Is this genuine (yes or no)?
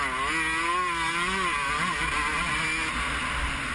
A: yes